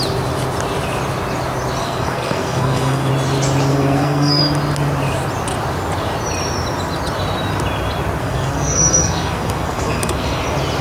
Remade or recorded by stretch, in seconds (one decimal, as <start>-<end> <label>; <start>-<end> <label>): 0.0-1.8 recorded; 1.8-3.1 remade; 3.1-3.7 recorded; 3.7-4.4 remade; 4.4-8.2 recorded; 8.2-10.4 remade; 10.4-10.8 recorded